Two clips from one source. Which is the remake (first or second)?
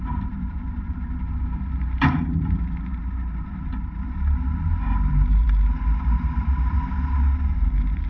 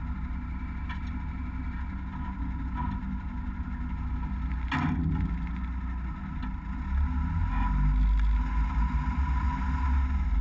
first